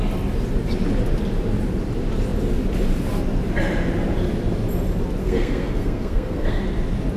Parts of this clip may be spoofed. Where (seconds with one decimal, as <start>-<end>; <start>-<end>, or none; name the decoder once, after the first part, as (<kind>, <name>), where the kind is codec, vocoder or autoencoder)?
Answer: 5.2-6.6 (codec, SNAC)